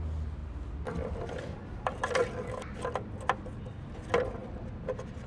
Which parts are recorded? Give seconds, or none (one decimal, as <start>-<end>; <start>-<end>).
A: 0.0-5.3